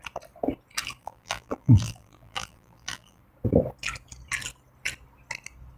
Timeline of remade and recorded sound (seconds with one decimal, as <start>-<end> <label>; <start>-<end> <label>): 0.0-1.0 recorded; 1.0-3.2 remade; 3.2-5.8 recorded